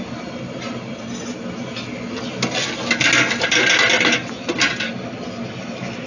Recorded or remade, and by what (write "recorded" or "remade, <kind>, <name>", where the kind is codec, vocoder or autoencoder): recorded